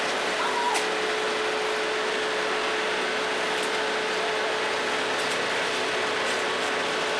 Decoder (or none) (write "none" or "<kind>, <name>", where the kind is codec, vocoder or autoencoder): none